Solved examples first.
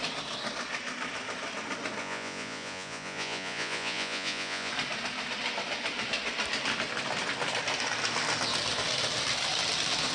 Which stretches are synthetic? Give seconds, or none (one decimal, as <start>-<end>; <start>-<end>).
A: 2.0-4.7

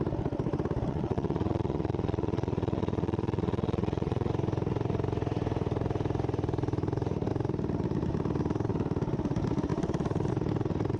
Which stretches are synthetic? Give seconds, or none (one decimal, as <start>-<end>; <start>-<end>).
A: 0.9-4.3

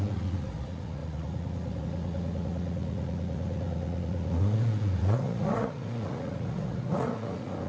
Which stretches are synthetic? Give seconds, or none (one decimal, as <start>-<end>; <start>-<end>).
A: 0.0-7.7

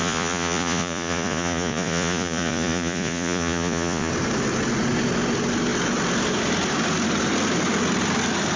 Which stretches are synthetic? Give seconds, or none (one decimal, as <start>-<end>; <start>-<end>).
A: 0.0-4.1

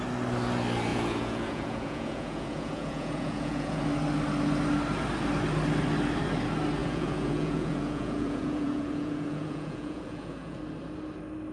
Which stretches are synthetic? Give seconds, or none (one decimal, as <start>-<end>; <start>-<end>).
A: 0.9-3.8; 6.8-10.6